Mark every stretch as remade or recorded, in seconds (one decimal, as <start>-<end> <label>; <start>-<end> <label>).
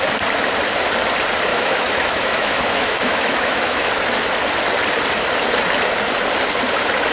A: 0.0-1.5 recorded; 1.5-3.9 remade; 3.9-7.1 recorded